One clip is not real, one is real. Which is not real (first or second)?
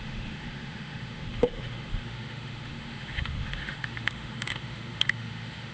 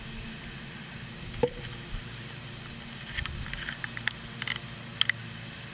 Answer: first